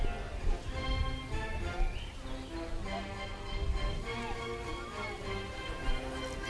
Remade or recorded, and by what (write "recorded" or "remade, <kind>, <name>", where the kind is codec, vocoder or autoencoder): recorded